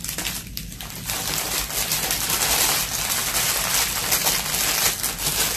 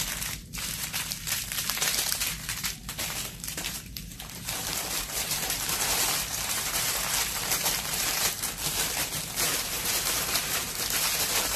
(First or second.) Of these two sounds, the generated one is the second